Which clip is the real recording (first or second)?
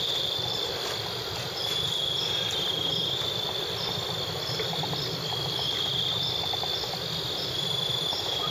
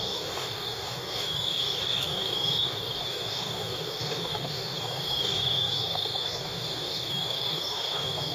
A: first